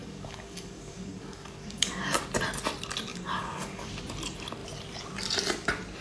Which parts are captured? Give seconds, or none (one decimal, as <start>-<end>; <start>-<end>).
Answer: 2.2-3.1; 3.9-6.0